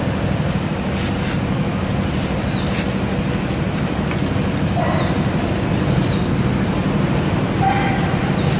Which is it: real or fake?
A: real